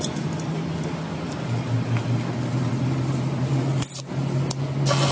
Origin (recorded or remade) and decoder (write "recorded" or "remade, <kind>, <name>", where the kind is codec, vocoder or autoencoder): recorded